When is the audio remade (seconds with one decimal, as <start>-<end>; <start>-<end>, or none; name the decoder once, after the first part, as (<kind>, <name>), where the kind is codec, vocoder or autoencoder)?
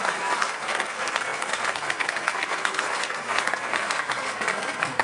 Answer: 0.0-5.0 (codec, SNAC)